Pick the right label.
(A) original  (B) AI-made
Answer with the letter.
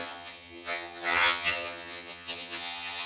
B